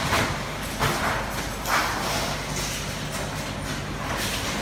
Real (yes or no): yes